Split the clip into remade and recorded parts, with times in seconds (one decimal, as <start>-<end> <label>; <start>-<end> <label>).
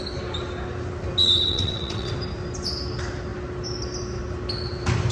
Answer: 0.0-1.2 recorded; 1.2-2.1 remade; 2.1-5.1 recorded